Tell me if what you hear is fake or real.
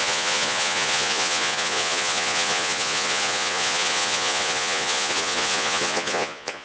fake